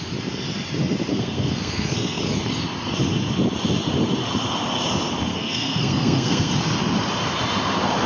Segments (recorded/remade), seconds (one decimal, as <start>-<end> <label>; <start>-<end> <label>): 0.0-1.1 recorded; 1.1-2.2 remade; 2.2-5.3 recorded; 5.3-6.5 remade; 6.5-8.1 recorded